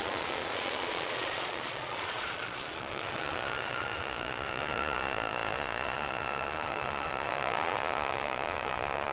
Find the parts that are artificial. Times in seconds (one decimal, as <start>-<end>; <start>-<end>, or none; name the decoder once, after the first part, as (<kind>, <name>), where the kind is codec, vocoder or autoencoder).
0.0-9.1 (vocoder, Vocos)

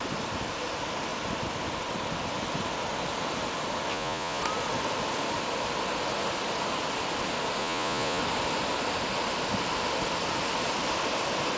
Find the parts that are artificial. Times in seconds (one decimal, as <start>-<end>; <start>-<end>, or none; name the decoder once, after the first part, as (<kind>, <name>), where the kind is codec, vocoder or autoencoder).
3.9-4.4 (vocoder, Vocos); 7.6-8.2

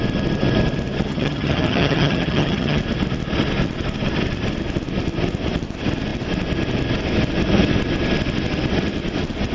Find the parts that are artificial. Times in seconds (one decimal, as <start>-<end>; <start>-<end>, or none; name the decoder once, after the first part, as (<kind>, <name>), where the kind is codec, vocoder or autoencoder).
1.1-2.8 (vocoder, HiFi-GAN)